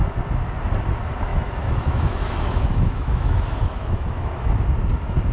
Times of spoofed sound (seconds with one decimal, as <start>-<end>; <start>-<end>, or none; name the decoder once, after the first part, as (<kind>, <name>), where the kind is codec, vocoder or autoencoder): 1.3-4.5 (autoencoder, DAC-VAE)